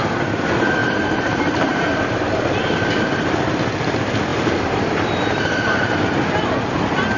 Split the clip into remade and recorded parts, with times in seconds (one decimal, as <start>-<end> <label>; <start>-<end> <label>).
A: 0.0-0.8 recorded; 0.8-1.8 remade; 1.8-4.3 recorded; 4.3-5.9 remade; 5.9-7.2 recorded